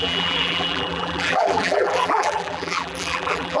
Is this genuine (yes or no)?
no